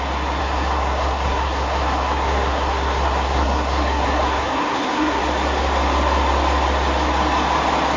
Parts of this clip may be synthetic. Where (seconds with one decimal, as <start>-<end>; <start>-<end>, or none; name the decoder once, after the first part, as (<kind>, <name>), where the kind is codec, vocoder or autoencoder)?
0.4-5.2 (codec, SNAC)